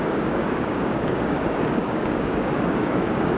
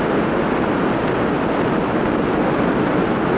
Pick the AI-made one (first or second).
first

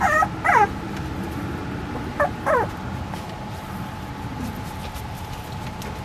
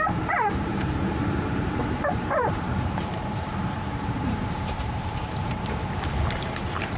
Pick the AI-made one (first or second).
second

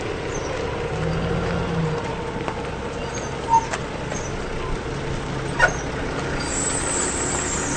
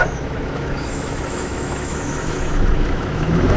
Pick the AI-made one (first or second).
second